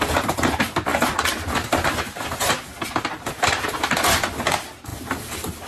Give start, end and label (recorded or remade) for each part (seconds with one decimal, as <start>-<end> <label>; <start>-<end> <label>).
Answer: 0.0-5.7 recorded